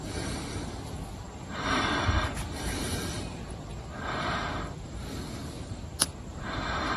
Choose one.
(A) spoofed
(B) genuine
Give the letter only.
A